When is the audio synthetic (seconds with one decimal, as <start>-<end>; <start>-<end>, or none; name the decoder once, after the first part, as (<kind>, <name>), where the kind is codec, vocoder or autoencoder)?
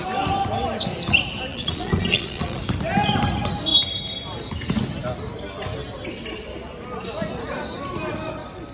1.5-2.6 (vocoder, Vocos)